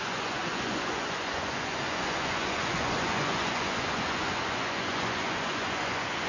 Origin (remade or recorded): remade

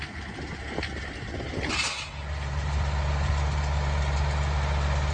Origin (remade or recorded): recorded